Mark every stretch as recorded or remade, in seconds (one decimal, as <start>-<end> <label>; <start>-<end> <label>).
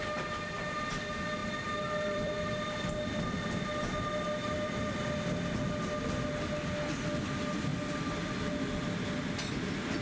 0.0-1.4 recorded; 1.4-4.9 remade; 4.9-7.7 recorded; 7.7-8.3 remade; 8.3-10.0 recorded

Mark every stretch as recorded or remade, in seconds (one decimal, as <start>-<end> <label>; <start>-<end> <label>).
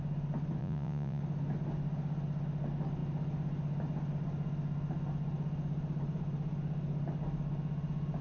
0.0-0.6 recorded; 0.6-1.2 remade; 1.2-8.2 recorded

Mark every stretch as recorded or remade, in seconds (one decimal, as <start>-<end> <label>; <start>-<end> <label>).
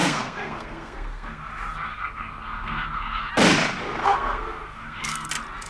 0.0-1.5 remade; 1.5-1.9 recorded; 1.9-3.3 remade; 3.3-4.0 recorded; 4.0-5.3 remade; 5.3-5.7 recorded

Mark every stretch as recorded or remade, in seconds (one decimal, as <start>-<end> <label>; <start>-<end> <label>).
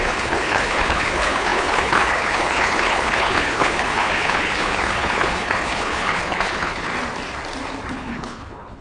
0.0-6.9 remade; 6.9-7.9 recorded; 7.9-8.8 remade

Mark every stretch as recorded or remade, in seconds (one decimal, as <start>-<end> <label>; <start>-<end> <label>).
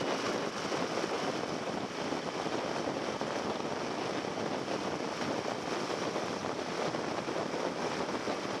0.0-8.6 recorded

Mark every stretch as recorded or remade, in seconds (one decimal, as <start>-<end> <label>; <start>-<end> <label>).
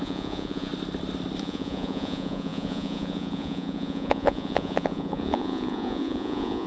0.0-0.7 remade; 0.7-1.4 recorded; 1.4-6.7 remade